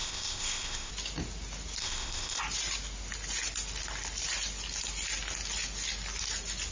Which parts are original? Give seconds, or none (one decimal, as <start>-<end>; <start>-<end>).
0.9-1.8; 2.4-6.7